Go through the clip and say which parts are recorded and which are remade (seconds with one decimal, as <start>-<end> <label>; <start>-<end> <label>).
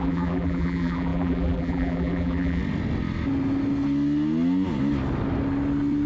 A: 0.0-2.6 remade; 2.6-6.1 recorded